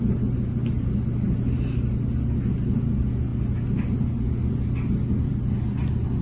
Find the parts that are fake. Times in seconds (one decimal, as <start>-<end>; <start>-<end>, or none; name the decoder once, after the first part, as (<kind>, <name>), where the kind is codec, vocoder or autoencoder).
none